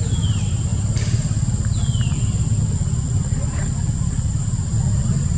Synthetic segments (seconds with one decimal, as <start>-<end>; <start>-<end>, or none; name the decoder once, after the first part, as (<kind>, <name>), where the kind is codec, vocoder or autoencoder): none

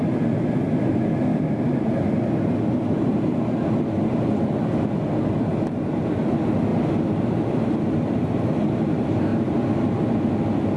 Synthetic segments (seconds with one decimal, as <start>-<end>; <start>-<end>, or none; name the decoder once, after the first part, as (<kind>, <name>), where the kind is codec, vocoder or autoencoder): none

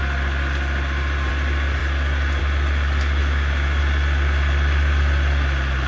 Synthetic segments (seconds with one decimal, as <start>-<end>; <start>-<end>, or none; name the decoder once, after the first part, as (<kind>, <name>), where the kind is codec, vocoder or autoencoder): 3.2-3.8 (autoencoder, DAC-VAE)

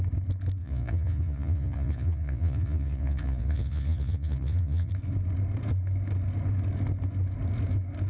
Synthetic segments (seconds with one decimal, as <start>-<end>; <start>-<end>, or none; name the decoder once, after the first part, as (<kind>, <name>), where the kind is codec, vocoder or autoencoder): 0.6-4.9 (vocoder, Vocos)